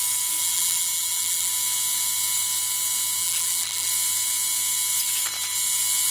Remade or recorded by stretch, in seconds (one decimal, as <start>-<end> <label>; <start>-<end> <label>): 0.0-0.4 recorded; 0.4-1.5 remade; 1.5-3.2 recorded; 3.2-3.9 remade; 3.9-6.1 recorded